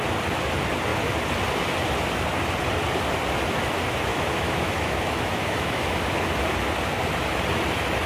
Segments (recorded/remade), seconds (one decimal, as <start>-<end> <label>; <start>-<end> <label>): 0.0-4.1 recorded; 4.1-6.4 remade; 6.4-8.1 recorded